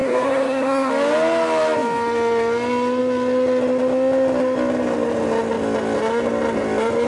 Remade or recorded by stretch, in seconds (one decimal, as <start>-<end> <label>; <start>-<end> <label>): 0.0-0.9 remade; 0.9-7.1 recorded